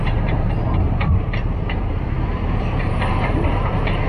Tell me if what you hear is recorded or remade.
remade